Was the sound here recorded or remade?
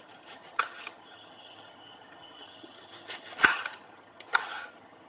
remade